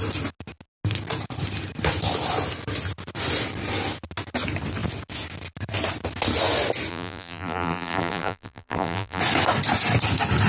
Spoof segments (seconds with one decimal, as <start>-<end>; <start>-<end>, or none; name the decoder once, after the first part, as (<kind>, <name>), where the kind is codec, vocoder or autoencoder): 6.9-9.2 (vocoder, BigVGAN v2)